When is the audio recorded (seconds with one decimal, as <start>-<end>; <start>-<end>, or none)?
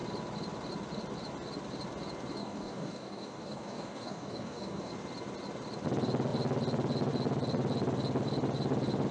0.0-2.4; 4.9-9.1